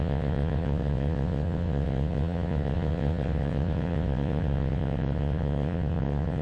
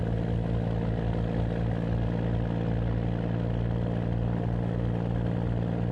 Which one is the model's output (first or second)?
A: first